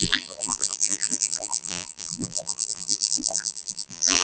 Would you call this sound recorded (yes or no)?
no